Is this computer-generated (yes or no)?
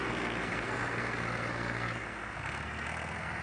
yes